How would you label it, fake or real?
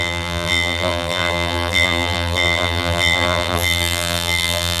fake